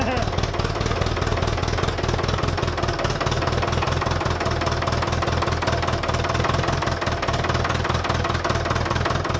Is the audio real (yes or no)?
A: yes